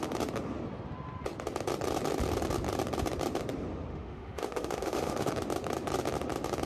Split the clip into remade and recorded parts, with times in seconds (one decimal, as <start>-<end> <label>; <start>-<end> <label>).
0.0-3.9 recorded; 3.9-5.3 remade; 5.3-6.7 recorded